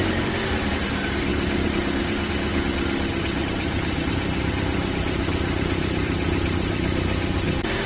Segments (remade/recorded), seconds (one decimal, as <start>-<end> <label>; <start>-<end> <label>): 0.0-1.3 remade; 1.3-3.4 recorded; 3.4-7.9 remade